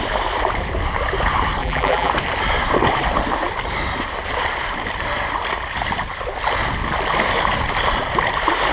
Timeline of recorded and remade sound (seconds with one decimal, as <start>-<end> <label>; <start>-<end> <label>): 0.0-1.6 recorded; 1.6-2.1 remade; 2.1-8.7 recorded